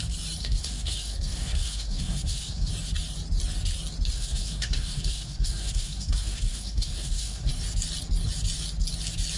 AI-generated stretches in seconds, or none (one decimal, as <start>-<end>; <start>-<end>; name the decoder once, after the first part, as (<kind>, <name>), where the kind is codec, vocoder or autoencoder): 0.4-2.7 (codec, SNAC); 4.1-7.5